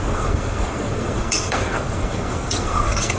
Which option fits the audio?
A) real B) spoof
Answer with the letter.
B